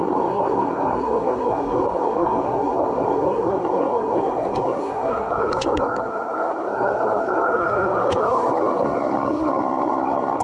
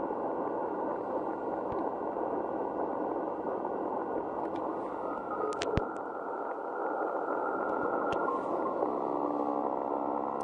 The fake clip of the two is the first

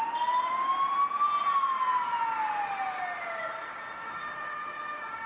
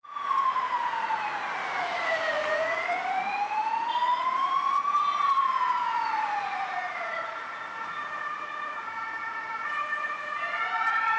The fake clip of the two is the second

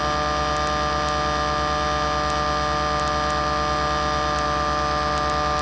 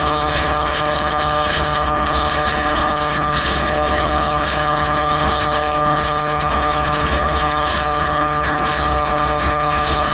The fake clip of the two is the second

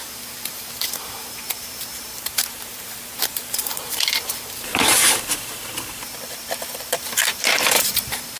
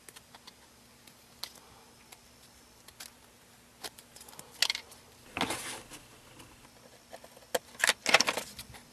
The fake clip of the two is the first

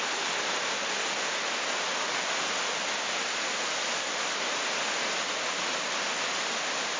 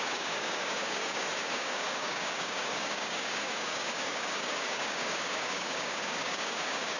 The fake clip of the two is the second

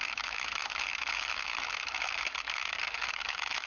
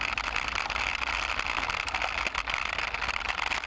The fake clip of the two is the first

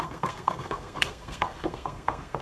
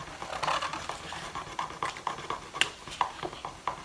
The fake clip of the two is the first